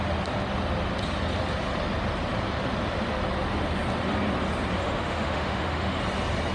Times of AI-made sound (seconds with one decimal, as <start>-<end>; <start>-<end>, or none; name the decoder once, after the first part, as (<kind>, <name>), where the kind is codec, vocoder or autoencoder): 4.8-6.0 (autoencoder, DAC-VAE)